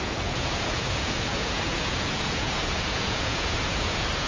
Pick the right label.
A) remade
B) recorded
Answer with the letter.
A